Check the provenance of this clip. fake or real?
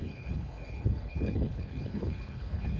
fake